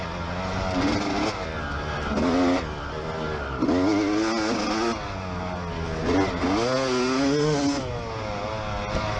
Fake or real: real